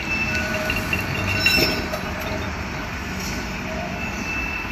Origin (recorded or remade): recorded